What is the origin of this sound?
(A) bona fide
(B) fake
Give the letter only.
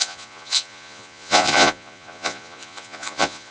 B